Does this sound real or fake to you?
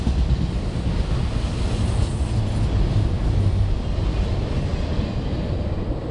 real